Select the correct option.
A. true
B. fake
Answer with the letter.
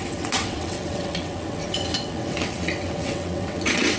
B